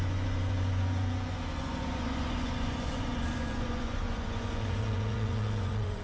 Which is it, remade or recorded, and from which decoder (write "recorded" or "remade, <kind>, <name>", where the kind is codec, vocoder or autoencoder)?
remade, vocoder, Vocos